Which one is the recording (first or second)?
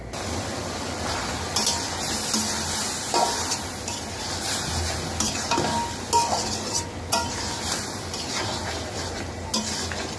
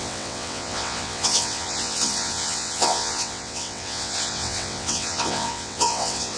first